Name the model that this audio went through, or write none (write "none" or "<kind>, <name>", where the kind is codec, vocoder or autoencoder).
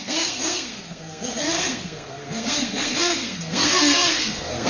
codec, SNAC